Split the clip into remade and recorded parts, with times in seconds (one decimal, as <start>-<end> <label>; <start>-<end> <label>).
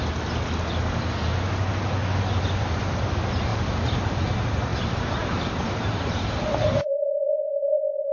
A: 0.0-3.5 recorded; 3.5-4.1 remade; 4.1-4.7 recorded; 4.7-7.4 remade; 7.4-8.1 recorded